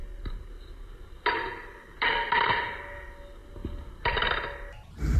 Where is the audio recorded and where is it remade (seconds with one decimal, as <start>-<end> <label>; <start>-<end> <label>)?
0.0-5.2 recorded